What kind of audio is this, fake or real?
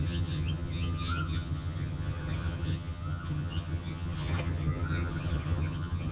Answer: fake